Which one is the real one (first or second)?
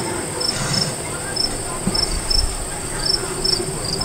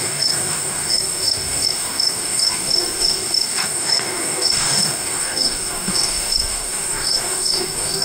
first